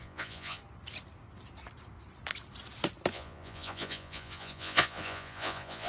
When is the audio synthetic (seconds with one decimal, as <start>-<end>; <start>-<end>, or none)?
0.0-0.6; 3.1-5.9